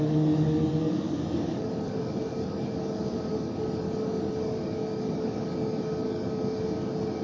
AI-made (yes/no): yes